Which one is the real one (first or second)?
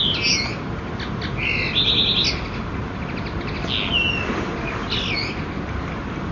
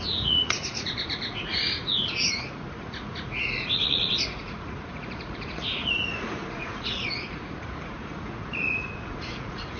first